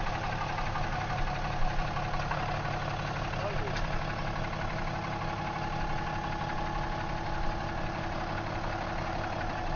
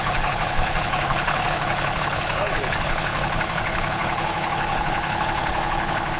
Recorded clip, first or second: first